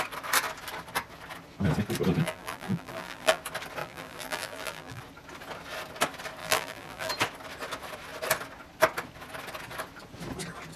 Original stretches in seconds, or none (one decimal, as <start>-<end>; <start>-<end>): 0.0-2.2; 3.4-3.8; 5.0-6.4; 7.1-10.8

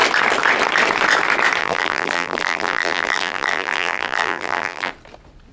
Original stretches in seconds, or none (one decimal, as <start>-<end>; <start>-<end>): 0.0-1.6; 4.9-5.5

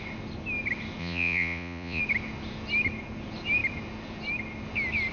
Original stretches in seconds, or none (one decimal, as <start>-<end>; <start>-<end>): 0.0-1.0; 2.0-5.1

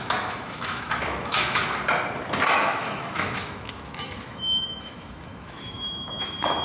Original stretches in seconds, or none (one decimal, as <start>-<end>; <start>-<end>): 1.6-2.6